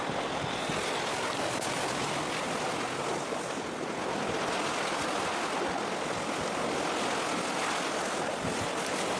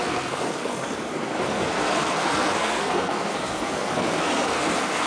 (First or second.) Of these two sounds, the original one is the first